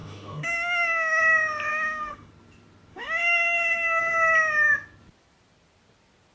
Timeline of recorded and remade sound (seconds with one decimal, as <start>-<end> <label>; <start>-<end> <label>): 0.0-1.2 remade; 1.2-1.7 recorded; 1.7-2.3 remade; 2.3-2.9 recorded; 2.9-4.0 remade; 4.0-6.3 recorded